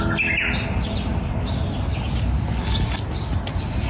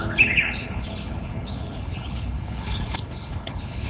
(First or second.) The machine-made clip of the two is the second